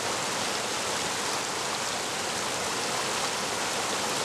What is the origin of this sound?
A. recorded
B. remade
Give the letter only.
A